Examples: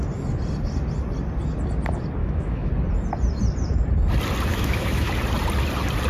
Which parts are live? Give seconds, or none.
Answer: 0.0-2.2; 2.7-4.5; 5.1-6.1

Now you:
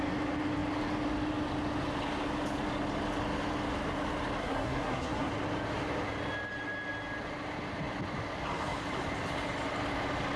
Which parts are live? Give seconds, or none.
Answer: 0.0-4.4; 5.3-10.4

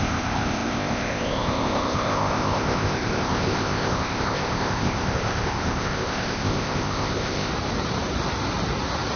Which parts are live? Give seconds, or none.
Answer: 7.5-9.2

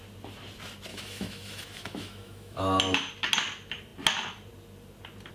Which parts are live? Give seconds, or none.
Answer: 0.0-0.9; 2.6-5.3

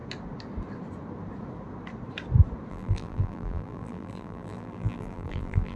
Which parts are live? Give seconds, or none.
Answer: 0.0-2.7